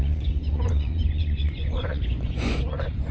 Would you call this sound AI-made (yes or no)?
yes